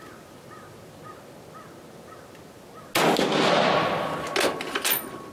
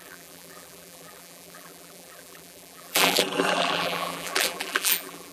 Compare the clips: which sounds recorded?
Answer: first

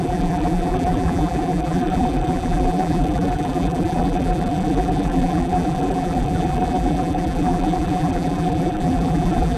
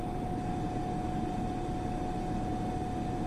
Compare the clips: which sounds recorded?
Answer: second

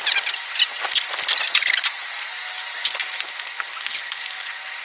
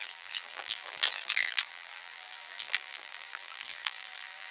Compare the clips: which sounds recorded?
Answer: first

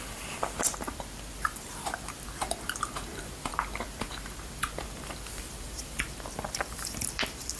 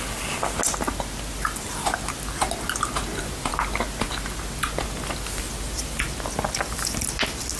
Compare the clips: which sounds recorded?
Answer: second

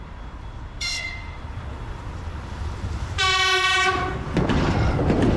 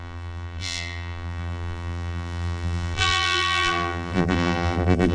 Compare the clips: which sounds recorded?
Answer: first